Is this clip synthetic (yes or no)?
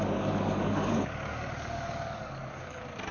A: yes